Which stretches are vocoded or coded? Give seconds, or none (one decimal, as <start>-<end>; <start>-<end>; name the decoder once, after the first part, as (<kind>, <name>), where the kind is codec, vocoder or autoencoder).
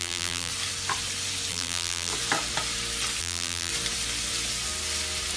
0.0-0.5 (vocoder, BigVGAN v2); 1.5-2.1; 3.2-3.7